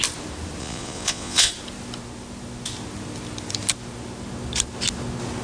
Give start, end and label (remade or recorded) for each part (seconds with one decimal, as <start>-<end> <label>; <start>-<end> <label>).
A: 0.0-0.6 recorded; 0.6-1.5 remade; 1.5-5.4 recorded